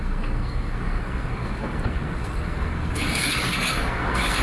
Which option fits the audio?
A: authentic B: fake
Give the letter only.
B